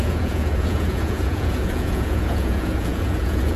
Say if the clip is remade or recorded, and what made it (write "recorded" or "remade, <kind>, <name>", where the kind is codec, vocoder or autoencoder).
remade, vocoder, Vocos